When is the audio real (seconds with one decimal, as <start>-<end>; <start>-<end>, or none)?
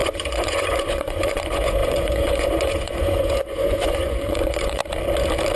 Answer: 4.8-5.6